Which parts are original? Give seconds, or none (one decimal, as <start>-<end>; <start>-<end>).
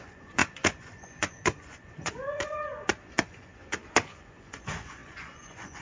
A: none